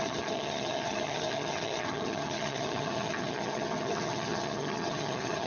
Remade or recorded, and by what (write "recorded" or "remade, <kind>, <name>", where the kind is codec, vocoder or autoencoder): remade, vocoder, HiFi-GAN